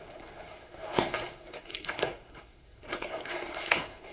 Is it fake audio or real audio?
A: fake